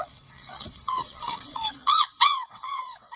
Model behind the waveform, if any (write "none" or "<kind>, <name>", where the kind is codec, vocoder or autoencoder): vocoder, WaveNeXt